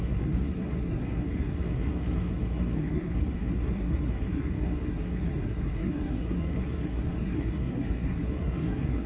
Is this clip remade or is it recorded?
remade